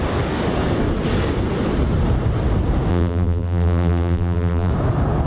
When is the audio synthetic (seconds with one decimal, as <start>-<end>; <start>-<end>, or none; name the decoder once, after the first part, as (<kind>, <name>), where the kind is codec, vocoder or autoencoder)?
2.9-4.7 (vocoder, BigVGAN v2)